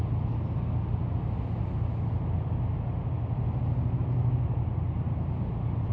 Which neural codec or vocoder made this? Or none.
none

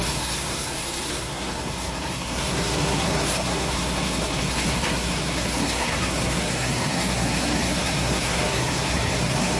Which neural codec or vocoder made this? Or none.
codec, SNAC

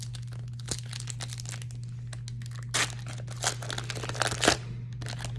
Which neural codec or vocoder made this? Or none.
none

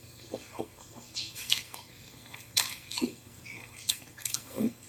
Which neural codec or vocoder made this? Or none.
codec, SNAC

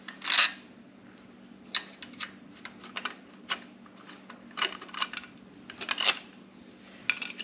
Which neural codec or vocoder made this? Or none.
none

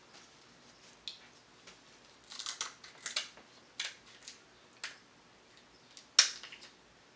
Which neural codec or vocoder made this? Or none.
none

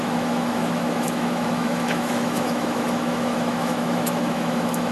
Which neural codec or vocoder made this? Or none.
autoencoder, DAC-VAE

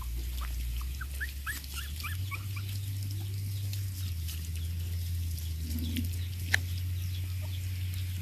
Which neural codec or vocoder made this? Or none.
none